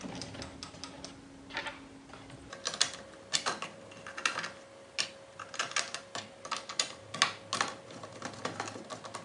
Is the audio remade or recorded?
recorded